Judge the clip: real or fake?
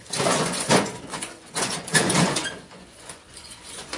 fake